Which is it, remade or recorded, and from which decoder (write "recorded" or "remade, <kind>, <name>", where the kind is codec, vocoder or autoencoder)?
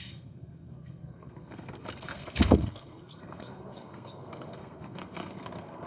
remade, codec, SNAC